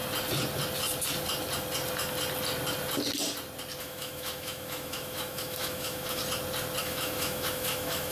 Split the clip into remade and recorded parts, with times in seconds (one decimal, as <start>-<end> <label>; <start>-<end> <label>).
0.0-3.8 recorded; 3.8-6.2 remade; 6.2-6.8 recorded; 6.8-8.1 remade